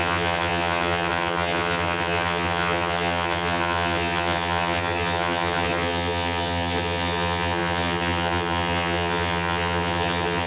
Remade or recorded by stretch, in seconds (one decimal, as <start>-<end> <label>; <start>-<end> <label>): 0.0-10.5 remade